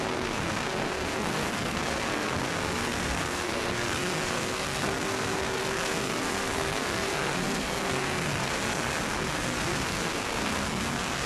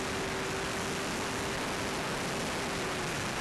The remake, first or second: first